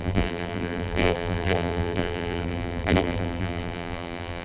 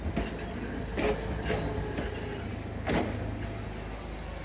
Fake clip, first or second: first